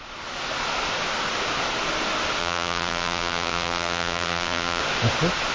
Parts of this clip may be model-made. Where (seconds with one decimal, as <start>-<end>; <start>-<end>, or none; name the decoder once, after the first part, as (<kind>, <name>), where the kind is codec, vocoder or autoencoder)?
2.4-4.8 (vocoder, BigVGAN v2)